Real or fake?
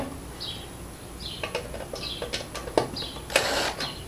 real